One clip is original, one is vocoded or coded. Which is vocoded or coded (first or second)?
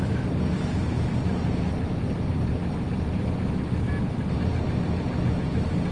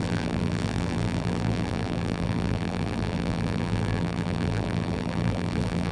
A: second